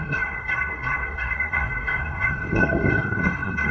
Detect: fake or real fake